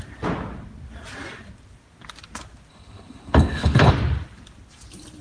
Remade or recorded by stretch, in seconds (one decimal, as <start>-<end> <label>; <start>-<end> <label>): 0.0-2.7 recorded; 2.7-3.9 remade; 3.9-5.2 recorded